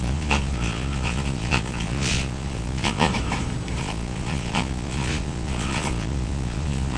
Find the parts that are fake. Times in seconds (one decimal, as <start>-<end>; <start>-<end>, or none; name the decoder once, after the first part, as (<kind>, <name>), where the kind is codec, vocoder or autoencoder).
0.0-3.1 (vocoder, Vocos); 3.8-7.0